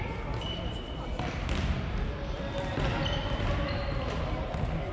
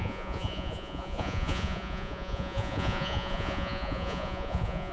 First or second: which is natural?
first